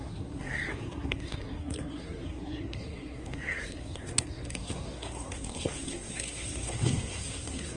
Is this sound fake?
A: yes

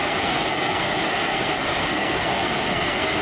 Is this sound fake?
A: yes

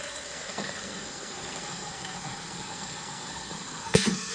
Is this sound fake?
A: yes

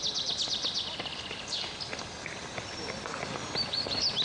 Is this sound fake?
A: no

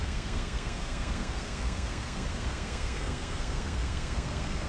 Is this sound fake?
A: yes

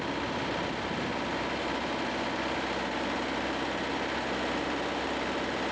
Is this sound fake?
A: no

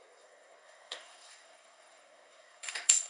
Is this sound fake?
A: yes